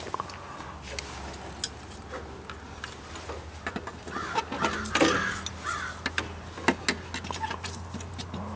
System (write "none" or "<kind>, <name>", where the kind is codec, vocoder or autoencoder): none